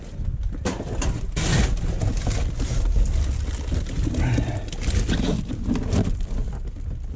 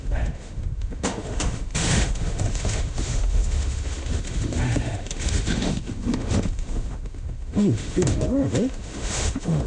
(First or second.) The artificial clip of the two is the second